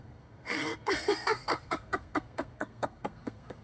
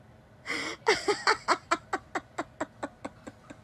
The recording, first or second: second